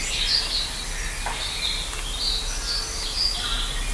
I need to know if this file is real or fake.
real